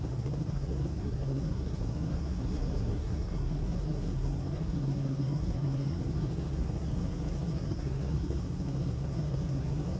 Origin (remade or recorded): remade